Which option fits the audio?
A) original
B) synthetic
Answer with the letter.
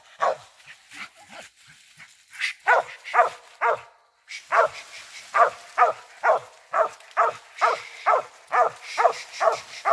A